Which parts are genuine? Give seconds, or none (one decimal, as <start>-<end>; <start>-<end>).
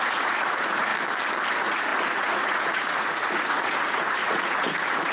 0.9-1.5